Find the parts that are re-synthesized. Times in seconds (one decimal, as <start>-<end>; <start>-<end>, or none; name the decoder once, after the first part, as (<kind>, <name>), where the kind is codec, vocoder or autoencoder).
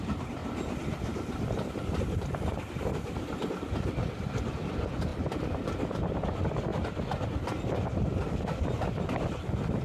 0.0-5.1 (vocoder, BigVGAN v2); 6.2-6.7; 8.6-9.8